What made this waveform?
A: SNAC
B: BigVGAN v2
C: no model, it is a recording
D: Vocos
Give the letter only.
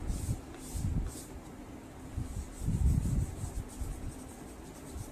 C